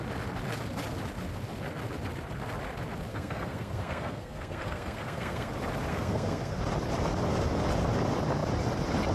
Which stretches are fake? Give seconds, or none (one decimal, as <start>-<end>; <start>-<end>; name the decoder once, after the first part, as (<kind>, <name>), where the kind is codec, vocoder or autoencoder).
3.1-5.5 (codec, SNAC); 5.9-6.6

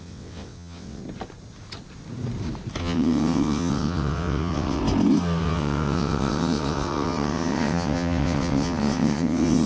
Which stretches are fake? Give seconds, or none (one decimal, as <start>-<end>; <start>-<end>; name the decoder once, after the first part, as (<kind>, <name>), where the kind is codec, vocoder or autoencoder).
0.0-1.0 (vocoder, WaveNeXt); 2.8-4.8; 5.4-9.7

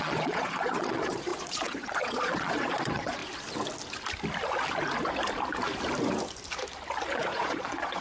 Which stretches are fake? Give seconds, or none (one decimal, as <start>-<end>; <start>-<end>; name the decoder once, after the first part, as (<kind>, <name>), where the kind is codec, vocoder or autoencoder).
0.0-3.2 (vocoder, Vocos); 7.2-8.0

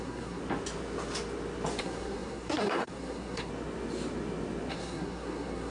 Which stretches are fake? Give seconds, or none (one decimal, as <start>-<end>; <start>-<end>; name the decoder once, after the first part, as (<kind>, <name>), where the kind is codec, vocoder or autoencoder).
0.0-0.4 (codec, SNAC); 1.8-3.5; 4.7-5.7

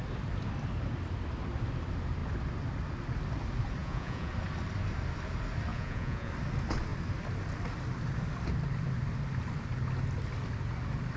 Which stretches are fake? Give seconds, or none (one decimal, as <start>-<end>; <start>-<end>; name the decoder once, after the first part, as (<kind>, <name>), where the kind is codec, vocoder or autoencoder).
3.8-4.3 (vocoder, Vocos); 5.7-6.3